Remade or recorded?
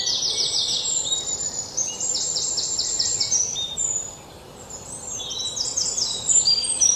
remade